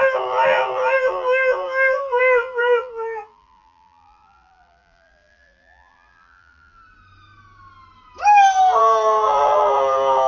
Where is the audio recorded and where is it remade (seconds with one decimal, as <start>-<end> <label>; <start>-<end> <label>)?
0.0-6.8 remade; 6.8-8.8 recorded; 8.8-10.3 remade